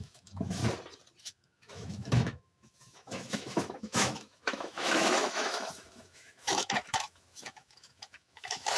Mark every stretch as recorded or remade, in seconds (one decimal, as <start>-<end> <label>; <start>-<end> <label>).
0.0-0.6 remade; 0.6-1.2 recorded; 1.2-8.8 remade